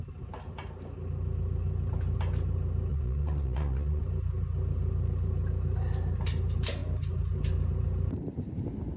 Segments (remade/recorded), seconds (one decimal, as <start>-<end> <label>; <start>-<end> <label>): 0.0-2.9 recorded; 2.9-4.0 remade; 4.0-9.0 recorded